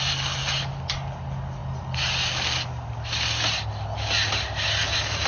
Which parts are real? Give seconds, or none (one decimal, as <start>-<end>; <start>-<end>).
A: 0.0-5.3